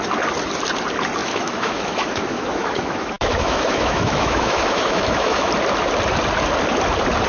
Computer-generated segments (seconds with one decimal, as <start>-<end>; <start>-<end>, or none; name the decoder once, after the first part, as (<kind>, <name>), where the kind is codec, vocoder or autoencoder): 1.2-5.5 (autoencoder, DAC-VAE)

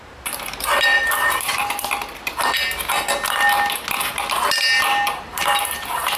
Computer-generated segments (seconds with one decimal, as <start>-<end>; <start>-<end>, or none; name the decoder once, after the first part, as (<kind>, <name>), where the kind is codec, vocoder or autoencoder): 0.0-1.6 (vocoder, BigVGAN v2); 5.3-6.2